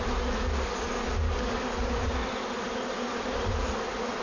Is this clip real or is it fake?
real